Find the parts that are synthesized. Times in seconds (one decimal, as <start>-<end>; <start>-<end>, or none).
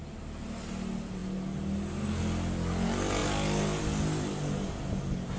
none